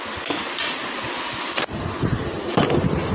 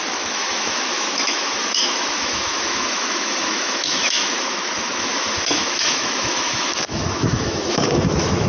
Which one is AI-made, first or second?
second